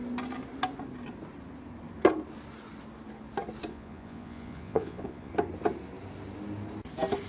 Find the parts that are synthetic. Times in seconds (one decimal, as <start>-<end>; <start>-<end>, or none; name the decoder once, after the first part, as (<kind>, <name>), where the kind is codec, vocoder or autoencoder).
3.7-5.3 (vocoder, Vocos)